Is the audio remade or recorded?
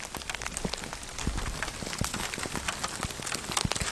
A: recorded